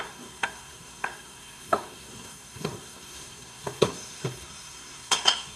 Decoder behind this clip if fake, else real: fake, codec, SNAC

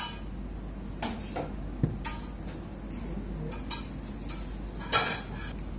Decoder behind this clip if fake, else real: real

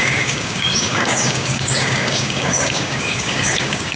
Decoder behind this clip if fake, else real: fake, codec, DAC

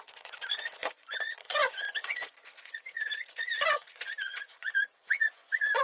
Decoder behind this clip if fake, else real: fake, vocoder, Vocos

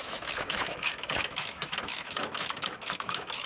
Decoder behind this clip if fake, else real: fake, autoencoder, DAC-VAE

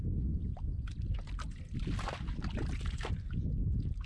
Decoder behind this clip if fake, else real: real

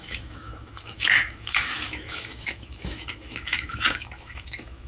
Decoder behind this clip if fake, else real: fake, autoencoder, DAC-VAE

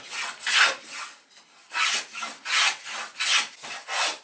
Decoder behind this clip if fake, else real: real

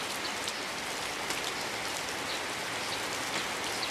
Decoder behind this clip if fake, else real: fake, vocoder, BigVGAN v2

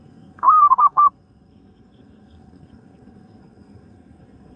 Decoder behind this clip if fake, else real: fake, codec, SNAC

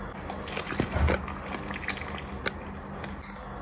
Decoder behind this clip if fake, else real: real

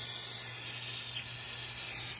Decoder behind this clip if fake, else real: real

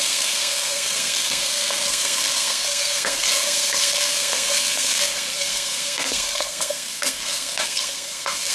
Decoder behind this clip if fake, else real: fake, codec, SNAC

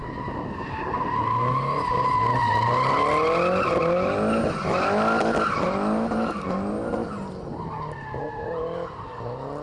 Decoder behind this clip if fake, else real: real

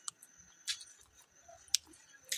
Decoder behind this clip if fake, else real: real